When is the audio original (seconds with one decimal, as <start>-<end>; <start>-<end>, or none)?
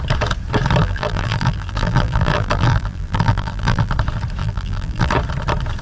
0.0-0.8; 3.9-4.4; 5.1-5.8